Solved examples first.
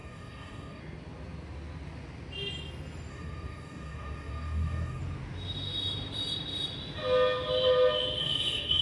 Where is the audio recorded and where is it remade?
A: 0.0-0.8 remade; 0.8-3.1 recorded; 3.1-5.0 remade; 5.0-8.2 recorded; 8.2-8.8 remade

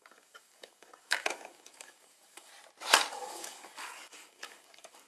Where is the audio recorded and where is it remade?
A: 0.0-2.5 remade; 2.5-3.1 recorded; 3.1-5.1 remade